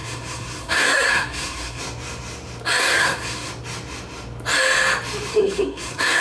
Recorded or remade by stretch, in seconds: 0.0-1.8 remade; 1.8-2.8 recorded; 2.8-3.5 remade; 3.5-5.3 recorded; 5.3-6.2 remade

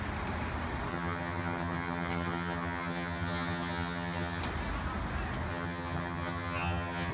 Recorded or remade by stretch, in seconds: 0.0-0.9 recorded; 0.9-4.4 remade; 4.4-5.5 recorded; 5.5-7.1 remade

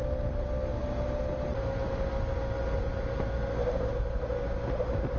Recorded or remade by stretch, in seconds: 0.0-5.2 recorded

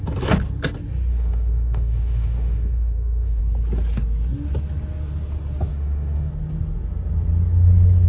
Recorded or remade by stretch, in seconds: 0.0-1.1 recorded; 1.1-3.4 remade; 3.4-5.7 recorded; 5.7-6.3 remade; 6.3-8.1 recorded

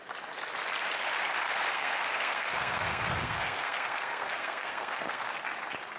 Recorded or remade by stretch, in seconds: 0.0-1.7 recorded; 1.7-5.3 remade; 5.3-6.0 recorded

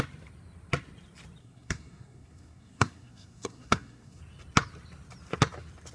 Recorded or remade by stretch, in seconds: 0.0-1.4 recorded; 1.4-4.2 remade; 4.2-5.9 recorded